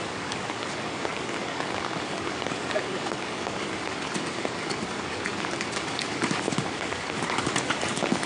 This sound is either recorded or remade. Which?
remade